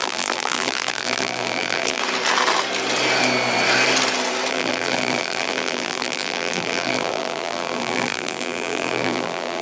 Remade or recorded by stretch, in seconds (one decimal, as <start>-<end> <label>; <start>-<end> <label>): 0.0-2.0 remade; 2.0-4.5 recorded; 4.5-9.6 remade